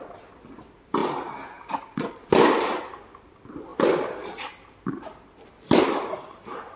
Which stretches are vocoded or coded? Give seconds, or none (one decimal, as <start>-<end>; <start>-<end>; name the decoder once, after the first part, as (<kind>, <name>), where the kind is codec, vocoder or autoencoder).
none